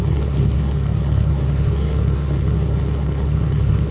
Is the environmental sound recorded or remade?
remade